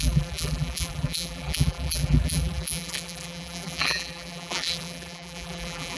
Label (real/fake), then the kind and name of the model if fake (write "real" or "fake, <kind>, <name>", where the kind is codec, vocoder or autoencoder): fake, vocoder, BigVGAN v2